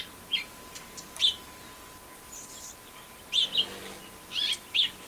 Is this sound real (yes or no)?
yes